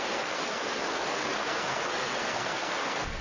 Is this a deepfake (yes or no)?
yes